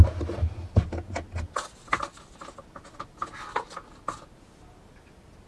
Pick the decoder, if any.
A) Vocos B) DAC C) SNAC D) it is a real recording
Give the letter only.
D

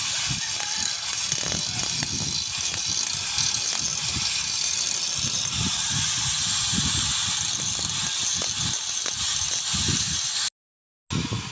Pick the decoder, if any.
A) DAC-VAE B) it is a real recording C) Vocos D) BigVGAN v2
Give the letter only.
B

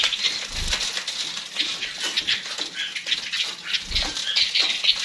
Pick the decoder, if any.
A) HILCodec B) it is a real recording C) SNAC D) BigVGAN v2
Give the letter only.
B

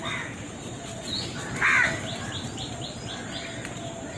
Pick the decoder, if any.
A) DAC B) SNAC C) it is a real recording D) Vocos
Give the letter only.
C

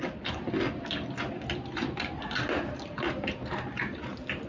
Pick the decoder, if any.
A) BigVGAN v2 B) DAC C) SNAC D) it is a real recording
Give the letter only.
D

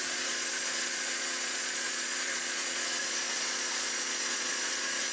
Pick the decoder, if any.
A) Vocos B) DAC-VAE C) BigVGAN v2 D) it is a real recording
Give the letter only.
A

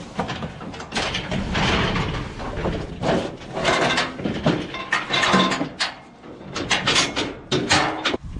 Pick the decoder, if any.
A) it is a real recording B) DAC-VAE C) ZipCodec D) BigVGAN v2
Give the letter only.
A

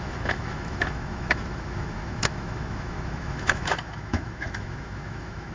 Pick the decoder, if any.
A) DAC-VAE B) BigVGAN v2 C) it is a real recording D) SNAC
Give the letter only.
A